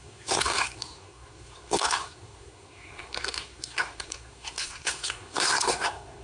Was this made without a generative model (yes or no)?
no